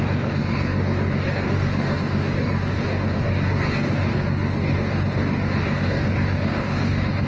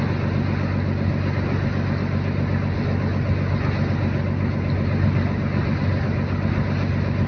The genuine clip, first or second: second